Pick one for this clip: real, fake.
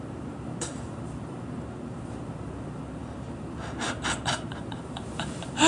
fake